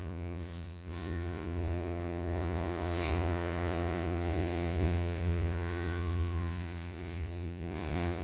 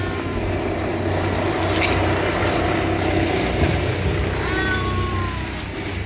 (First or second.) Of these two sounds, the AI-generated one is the first